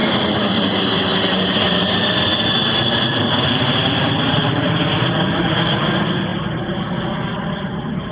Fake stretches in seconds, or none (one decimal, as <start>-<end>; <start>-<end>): 3.1-4.4; 6.3-6.8

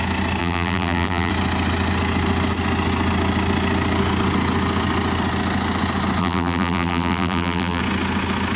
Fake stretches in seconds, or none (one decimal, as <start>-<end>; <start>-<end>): 0.4-1.3; 6.2-7.8

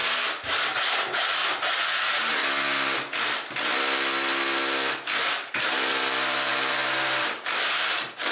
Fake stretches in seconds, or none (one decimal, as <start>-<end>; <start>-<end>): 0.8-1.4; 2.0-2.4; 5.2-8.3